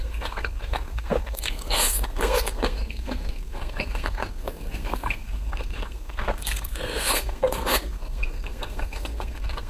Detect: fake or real fake